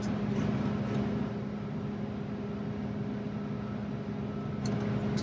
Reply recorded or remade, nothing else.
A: recorded